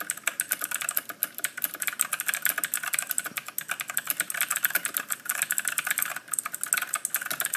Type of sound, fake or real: real